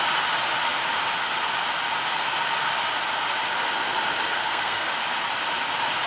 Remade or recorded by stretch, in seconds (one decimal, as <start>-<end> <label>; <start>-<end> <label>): 0.0-4.4 recorded; 4.4-4.9 remade; 4.9-6.1 recorded